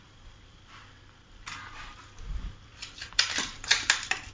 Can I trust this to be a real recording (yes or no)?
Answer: no